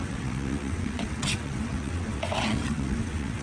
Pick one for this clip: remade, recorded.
remade